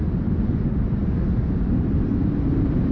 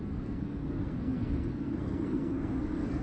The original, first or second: first